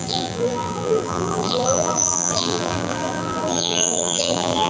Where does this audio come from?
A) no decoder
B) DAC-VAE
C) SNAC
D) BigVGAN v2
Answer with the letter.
D